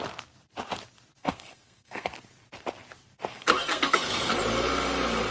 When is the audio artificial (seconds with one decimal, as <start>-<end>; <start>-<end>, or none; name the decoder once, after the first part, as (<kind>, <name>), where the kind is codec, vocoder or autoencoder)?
1.2-2.1 (codec, SNAC); 3.3-4.3